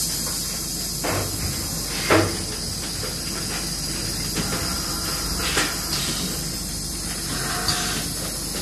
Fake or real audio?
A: real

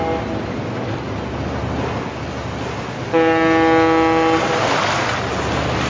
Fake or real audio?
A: real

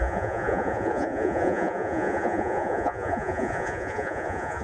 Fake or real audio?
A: fake